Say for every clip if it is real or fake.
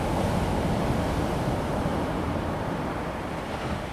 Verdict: real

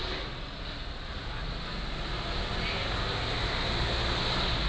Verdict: real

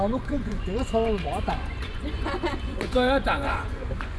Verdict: fake